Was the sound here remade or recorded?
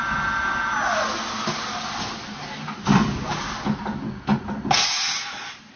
recorded